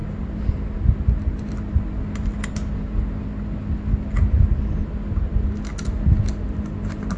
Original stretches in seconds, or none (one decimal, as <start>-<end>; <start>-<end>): 0.0-7.2